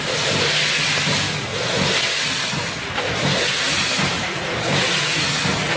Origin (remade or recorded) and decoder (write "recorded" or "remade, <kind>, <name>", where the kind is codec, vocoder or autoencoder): recorded